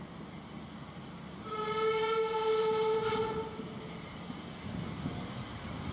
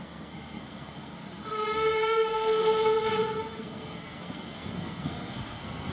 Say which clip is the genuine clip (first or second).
first